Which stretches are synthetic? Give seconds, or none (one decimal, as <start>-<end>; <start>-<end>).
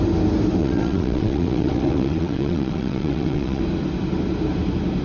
0.6-3.6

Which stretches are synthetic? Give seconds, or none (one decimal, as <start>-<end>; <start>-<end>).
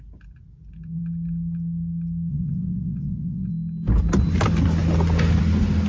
2.3-3.5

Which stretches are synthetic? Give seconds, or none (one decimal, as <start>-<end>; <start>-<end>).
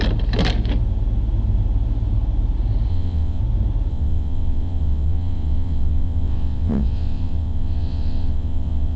2.9-3.4; 3.9-9.0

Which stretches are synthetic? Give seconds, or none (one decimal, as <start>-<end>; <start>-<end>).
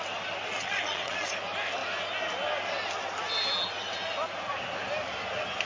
0.5-1.3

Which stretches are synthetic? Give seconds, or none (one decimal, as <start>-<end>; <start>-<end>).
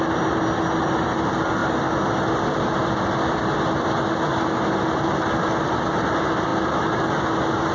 none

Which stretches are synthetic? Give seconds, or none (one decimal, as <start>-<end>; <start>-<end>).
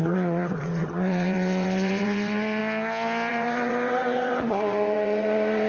0.0-2.6; 3.3-5.7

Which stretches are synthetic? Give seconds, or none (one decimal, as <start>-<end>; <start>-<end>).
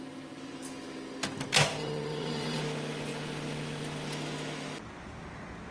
1.8-2.6